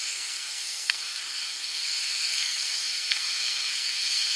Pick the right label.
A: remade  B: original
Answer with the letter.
A